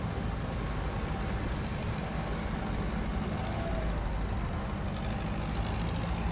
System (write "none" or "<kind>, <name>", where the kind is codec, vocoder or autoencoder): none